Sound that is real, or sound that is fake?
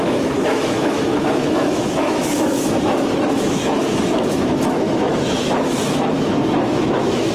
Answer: fake